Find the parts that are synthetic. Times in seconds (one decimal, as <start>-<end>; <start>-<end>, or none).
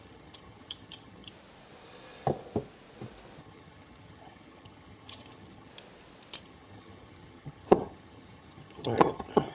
0.0-1.3; 3.4-5.7; 6.4-9.5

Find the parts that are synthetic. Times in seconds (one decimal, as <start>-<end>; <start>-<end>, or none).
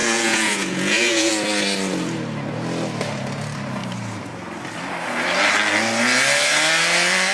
0.0-1.3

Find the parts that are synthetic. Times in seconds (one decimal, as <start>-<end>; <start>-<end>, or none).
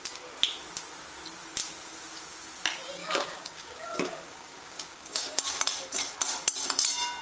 3.0-5.6